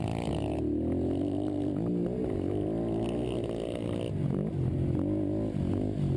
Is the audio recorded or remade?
recorded